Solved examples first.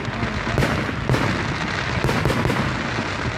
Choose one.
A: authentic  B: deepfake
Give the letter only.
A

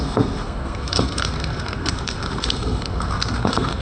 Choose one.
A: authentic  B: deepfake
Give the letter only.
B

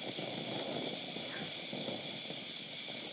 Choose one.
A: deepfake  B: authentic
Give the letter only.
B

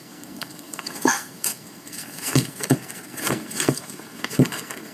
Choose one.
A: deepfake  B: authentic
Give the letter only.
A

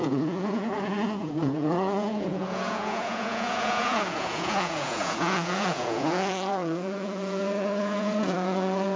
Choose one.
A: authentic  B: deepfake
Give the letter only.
B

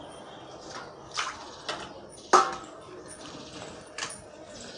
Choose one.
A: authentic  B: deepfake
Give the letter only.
A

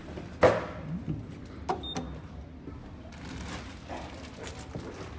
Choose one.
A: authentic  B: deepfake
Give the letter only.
A